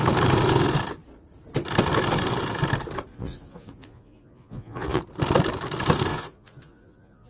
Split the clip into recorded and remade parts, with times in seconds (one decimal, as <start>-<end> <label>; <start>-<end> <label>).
0.0-3.1 recorded; 3.1-5.0 remade; 5.0-6.1 recorded; 6.1-7.3 remade